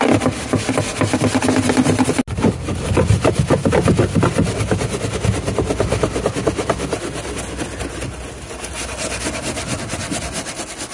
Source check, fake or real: real